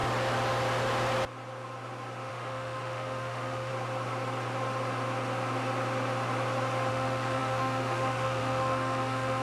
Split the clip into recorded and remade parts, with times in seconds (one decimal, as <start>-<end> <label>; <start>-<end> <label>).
0.0-2.3 recorded; 2.3-3.7 remade; 3.7-6.9 recorded; 6.9-9.4 remade

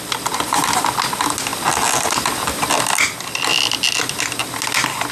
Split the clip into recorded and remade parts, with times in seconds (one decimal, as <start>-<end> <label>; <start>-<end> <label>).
0.0-5.1 recorded